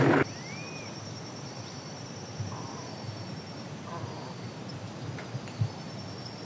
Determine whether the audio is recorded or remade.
recorded